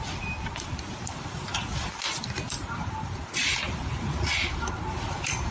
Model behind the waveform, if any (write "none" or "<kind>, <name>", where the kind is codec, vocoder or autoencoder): vocoder, BigVGAN v2